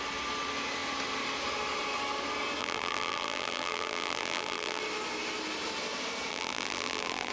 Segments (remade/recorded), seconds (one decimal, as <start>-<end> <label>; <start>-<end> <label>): 0.0-2.6 recorded; 2.6-4.8 remade; 4.8-6.3 recorded; 6.3-7.3 remade